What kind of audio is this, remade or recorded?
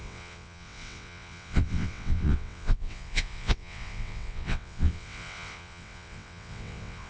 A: remade